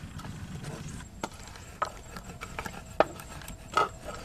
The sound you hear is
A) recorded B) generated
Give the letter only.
A